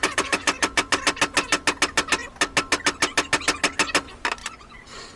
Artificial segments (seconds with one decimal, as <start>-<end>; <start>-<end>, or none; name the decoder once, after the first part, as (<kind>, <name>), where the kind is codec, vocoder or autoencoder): 0.0-1.0 (vocoder, Vocos); 4.4-5.2